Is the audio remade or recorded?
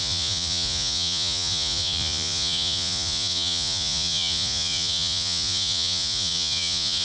remade